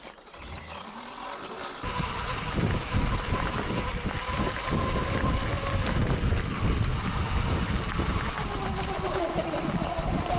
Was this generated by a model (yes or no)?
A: no